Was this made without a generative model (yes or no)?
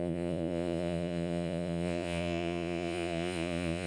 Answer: no